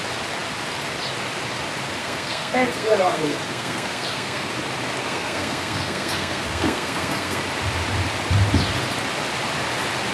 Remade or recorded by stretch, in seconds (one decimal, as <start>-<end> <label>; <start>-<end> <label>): 0.0-2.0 recorded; 2.0-4.5 remade; 4.5-5.0 recorded; 5.0-7.4 remade; 7.4-10.1 recorded